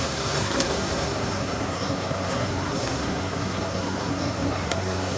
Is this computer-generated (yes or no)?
yes